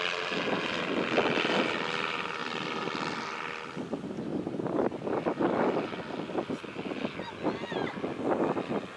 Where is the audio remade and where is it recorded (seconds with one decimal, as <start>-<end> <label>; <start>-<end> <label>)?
0.0-9.0 recorded